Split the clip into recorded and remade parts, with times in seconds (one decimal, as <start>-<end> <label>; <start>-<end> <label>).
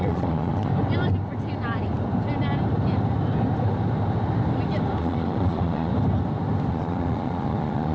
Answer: 0.0-0.7 remade; 0.7-5.0 recorded; 5.0-5.9 remade; 5.9-6.7 recorded; 6.7-7.9 remade